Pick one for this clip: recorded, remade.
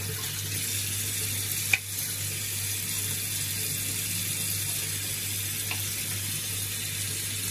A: recorded